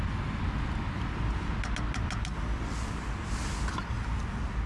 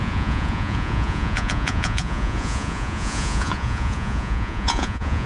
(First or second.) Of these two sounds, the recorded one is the first